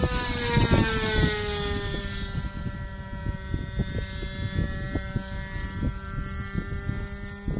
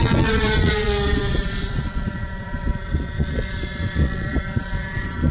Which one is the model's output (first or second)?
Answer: second